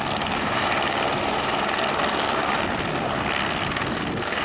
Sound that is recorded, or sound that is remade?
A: recorded